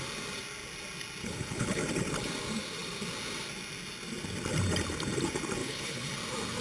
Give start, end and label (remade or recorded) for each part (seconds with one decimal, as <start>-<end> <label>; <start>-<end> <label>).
0.0-1.2 recorded; 1.2-1.8 remade; 1.8-5.6 recorded; 5.6-6.1 remade; 6.1-6.6 recorded